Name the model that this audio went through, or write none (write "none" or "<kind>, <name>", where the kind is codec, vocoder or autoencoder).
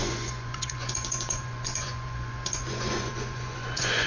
vocoder, Vocos